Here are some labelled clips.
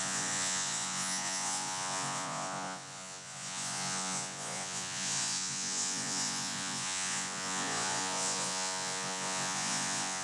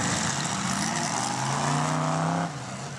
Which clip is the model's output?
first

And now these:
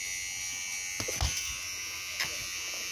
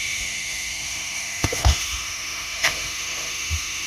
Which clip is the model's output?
second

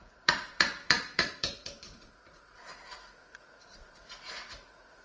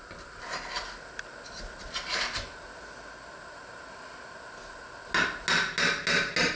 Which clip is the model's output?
first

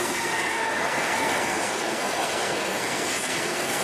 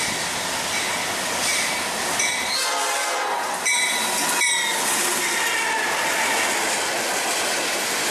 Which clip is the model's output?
first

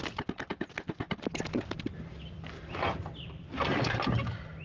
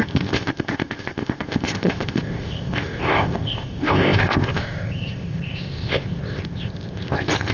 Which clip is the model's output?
second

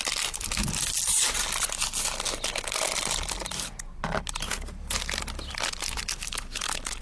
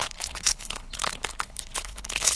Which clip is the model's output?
second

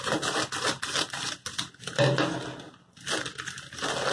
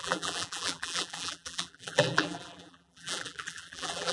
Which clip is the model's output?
second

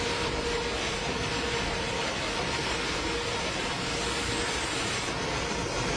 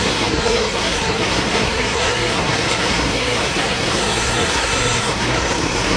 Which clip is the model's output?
second